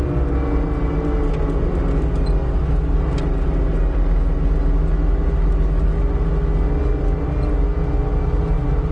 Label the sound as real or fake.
real